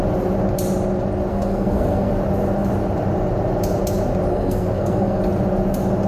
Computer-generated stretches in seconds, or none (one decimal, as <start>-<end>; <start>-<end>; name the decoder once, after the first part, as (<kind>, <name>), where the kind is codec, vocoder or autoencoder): 1.3-2.1 (codec, SNAC); 4.3-5.2